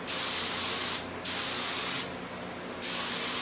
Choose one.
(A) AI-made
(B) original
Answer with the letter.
B